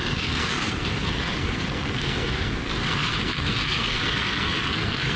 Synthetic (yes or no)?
yes